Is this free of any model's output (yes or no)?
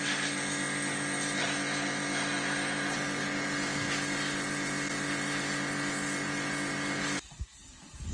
yes